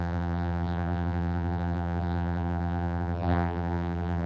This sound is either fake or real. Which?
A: fake